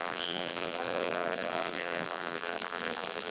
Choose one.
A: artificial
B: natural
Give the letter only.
A